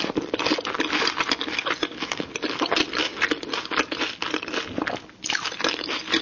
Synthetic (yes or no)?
no